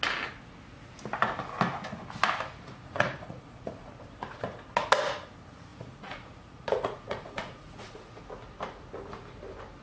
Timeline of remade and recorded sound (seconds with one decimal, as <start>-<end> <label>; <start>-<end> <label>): 0.0-2.5 recorded; 2.5-3.9 remade; 3.9-5.7 recorded; 5.7-8.2 remade; 8.2-9.8 recorded